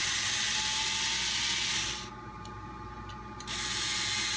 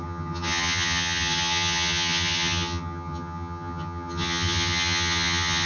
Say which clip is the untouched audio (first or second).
first